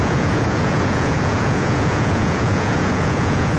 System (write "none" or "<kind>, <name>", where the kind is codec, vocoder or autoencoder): vocoder, Vocos